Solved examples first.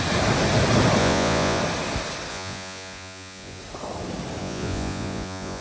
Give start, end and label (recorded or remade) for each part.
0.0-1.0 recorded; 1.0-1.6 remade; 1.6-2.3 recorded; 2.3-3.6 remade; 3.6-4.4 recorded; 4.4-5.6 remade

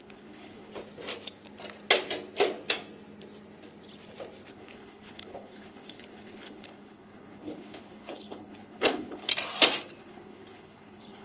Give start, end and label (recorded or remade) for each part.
0.0-0.7 remade; 0.7-4.5 recorded; 4.5-9.3 remade; 9.3-10.0 recorded; 10.0-11.2 remade

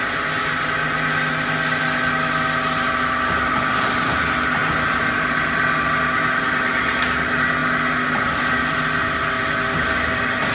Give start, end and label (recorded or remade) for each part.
0.0-10.5 recorded

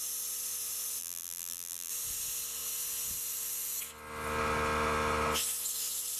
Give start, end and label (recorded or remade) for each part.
0.0-1.0 recorded; 1.0-1.9 remade; 1.9-6.2 recorded